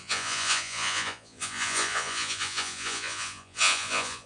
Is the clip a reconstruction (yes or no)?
yes